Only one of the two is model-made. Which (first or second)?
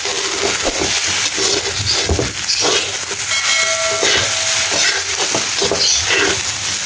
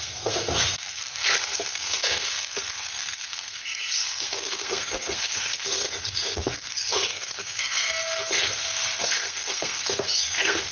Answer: second